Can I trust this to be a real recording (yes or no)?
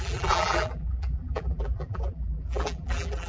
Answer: no